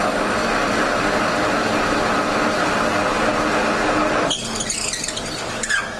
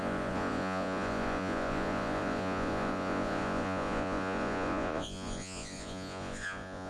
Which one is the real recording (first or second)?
first